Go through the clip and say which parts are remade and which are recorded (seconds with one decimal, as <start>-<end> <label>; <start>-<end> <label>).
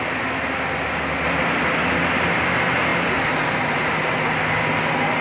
0.0-5.2 recorded